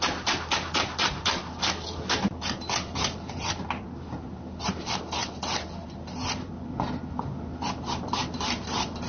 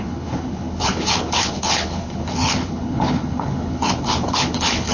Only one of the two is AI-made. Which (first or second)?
second